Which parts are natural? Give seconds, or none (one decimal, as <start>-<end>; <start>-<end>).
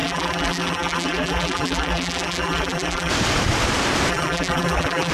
3.1-4.1